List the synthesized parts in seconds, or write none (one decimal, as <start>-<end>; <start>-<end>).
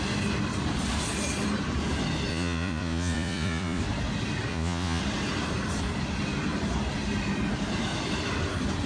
2.3-3.8; 4.5-5.0